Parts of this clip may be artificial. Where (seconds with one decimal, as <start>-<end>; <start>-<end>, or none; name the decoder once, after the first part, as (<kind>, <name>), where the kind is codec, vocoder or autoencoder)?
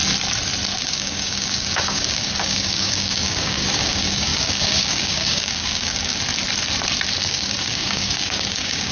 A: 0.8-6.1 (codec, DAC); 7.2-8.9